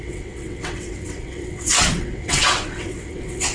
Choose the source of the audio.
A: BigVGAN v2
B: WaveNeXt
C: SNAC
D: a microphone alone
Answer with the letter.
B